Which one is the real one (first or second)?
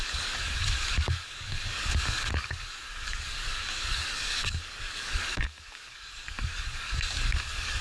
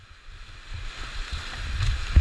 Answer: second